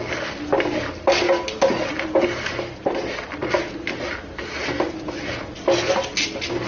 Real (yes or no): yes